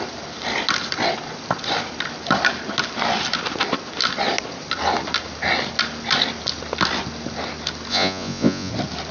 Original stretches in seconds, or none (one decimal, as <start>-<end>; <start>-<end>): 0.0-7.9; 8.7-9.1